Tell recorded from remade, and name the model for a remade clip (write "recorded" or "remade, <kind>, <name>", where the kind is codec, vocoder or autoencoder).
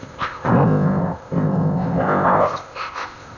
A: remade, codec, ZipCodec